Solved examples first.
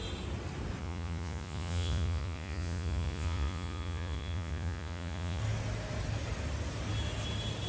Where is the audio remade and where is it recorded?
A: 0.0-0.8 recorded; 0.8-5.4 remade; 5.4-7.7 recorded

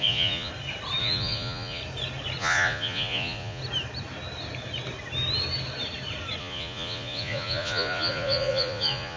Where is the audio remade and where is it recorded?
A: 0.0-0.5 remade; 0.5-1.0 recorded; 1.0-1.8 remade; 1.8-2.4 recorded; 2.4-3.6 remade; 3.6-6.4 recorded; 6.4-9.2 remade